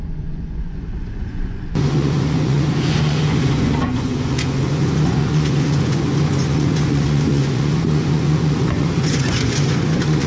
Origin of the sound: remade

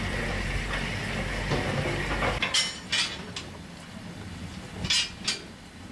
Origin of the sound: recorded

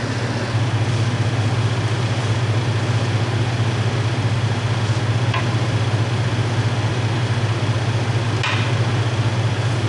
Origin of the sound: recorded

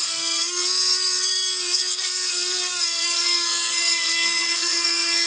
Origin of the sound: remade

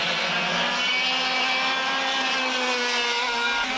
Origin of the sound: recorded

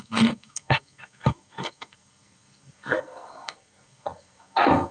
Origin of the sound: remade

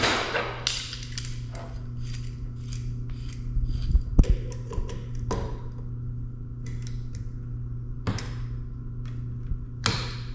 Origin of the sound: recorded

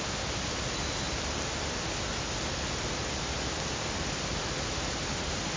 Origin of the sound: recorded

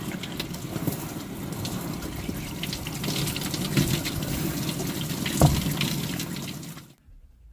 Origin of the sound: recorded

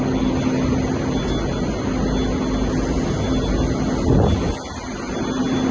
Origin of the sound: recorded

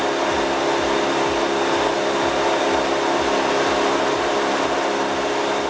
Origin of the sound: recorded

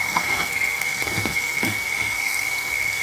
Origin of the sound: remade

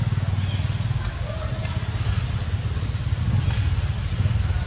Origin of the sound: recorded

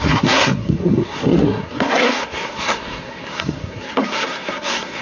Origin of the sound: remade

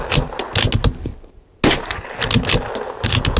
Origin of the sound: recorded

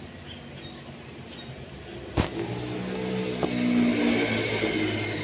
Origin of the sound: recorded